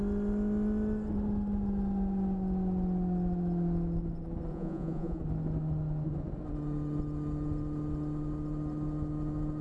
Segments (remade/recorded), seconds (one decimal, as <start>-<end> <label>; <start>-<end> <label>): 0.0-4.5 recorded; 4.5-5.2 remade; 5.2-9.6 recorded